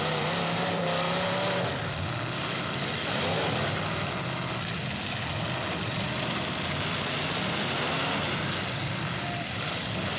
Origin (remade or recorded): remade